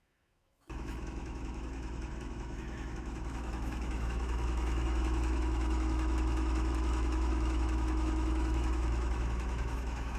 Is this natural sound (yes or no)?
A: no